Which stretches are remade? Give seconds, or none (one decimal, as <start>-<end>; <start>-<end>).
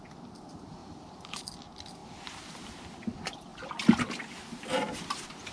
none